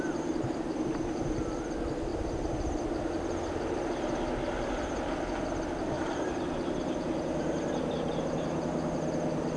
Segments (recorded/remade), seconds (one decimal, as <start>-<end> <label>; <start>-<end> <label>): 0.0-9.6 recorded